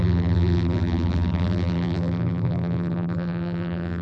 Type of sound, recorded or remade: remade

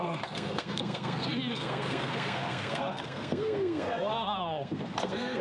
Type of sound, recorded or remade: remade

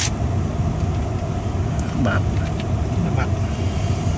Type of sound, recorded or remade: recorded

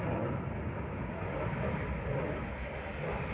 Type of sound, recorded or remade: recorded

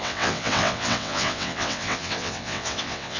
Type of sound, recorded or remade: remade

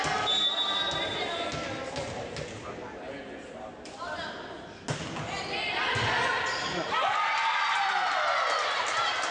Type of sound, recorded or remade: recorded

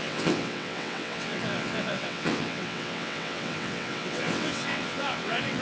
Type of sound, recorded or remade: remade